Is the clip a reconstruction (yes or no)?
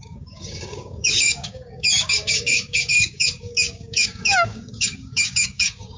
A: yes